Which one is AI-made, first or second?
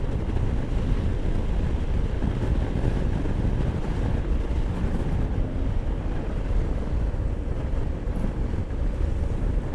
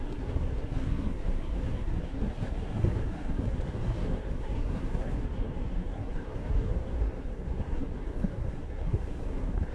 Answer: second